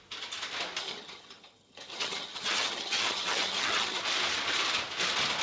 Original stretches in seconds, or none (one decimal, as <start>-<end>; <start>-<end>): 0.0-0.8; 4.0-5.4